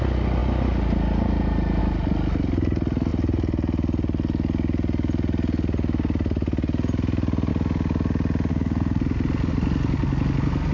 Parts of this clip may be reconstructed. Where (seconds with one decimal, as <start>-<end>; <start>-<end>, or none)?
8.5-9.0